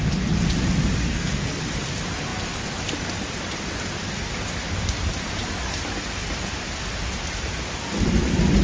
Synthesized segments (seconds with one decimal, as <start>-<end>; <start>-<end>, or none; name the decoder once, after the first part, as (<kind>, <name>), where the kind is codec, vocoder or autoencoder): 1.0-1.6 (codec, SNAC)